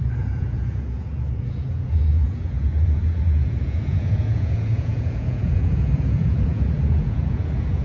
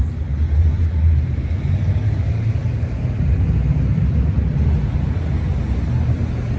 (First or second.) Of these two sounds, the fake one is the first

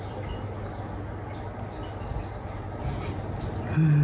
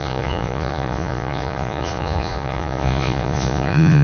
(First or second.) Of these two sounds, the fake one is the second